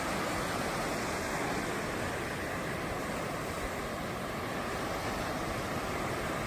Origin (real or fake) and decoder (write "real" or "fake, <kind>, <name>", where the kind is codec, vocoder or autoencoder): real